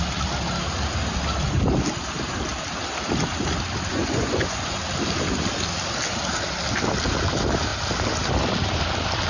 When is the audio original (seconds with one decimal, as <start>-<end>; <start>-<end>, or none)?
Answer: 0.0-3.9; 4.8-9.3